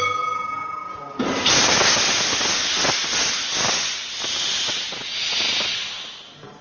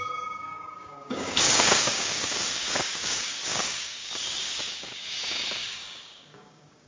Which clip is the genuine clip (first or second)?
first